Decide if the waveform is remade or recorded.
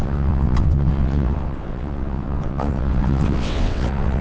remade